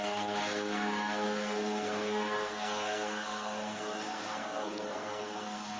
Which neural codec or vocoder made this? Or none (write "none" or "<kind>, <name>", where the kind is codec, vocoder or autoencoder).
codec, SNAC